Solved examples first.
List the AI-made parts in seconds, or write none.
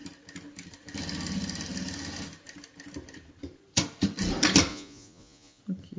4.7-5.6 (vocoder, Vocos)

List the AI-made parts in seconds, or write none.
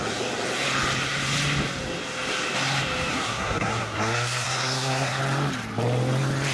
3.1-5.2 (codec, SNAC)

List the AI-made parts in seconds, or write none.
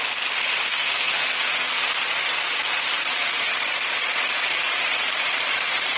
0.7-1.8 (codec, SNAC)